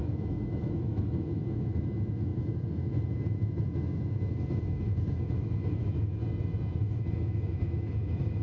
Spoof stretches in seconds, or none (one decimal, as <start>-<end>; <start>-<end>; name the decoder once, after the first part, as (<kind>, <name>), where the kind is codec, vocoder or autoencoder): 0.0-6.2 (autoencoder, DAC-VAE); 6.8-8.4

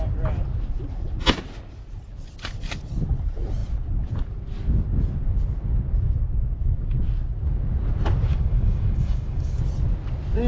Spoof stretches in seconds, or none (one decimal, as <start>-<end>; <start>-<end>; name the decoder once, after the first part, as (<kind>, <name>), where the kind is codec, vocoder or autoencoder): 8.3-9.6 (codec, DAC)

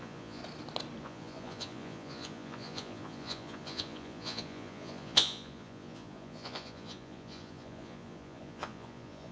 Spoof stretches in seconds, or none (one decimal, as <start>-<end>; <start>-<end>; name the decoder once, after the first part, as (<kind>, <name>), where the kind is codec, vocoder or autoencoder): 0.0-0.4 (vocoder, Vocos); 1.0-9.3

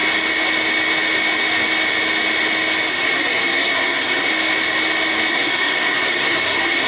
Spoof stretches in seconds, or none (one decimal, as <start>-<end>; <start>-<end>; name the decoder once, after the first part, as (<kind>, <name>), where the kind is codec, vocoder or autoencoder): 2.9-4.3 (codec, SNAC); 5.3-6.9

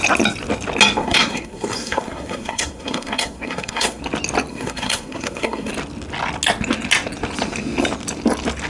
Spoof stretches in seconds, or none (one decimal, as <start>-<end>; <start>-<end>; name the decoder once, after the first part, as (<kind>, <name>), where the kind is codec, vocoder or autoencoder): 1.0-4.0 (codec, SNAC); 4.5-5.7

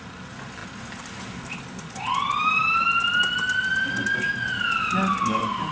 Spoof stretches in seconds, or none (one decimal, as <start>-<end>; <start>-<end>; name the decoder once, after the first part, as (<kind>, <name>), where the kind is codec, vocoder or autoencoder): none